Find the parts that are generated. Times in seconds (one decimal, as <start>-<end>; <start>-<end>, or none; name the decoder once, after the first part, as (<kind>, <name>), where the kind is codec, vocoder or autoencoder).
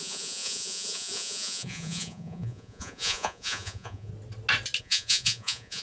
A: 0.0-4.1 (vocoder, Vocos); 4.8-5.8